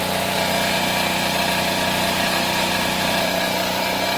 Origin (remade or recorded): remade